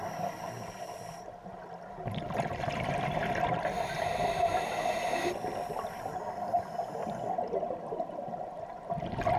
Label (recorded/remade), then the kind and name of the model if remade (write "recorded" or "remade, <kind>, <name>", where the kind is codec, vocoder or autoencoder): recorded